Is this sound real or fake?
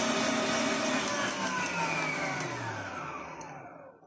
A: real